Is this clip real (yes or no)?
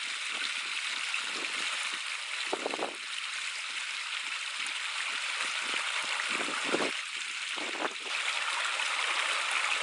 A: yes